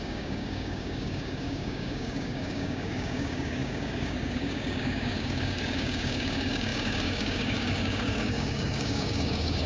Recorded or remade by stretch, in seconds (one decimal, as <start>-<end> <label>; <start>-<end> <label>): 0.0-9.7 remade